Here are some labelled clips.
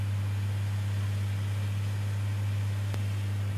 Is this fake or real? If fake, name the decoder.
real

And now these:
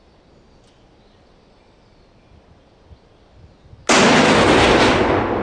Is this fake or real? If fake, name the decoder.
real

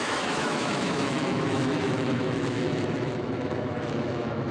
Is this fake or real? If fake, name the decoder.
fake, autoencoder, DAC-VAE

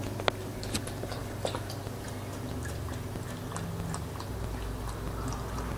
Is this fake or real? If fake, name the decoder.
real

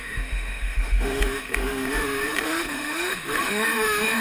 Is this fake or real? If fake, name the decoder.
fake, autoencoder, DAC-VAE